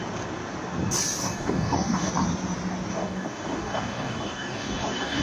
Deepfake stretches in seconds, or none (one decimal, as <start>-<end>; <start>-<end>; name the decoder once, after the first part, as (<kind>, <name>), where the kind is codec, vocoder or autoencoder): 1.2-2.1 (codec, DAC); 2.9-5.2